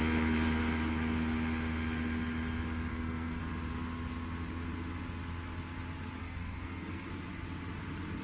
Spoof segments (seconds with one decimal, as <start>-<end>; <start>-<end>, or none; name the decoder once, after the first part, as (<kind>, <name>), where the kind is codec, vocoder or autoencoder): 2.9-3.4 (codec, SNAC); 6.2-7.1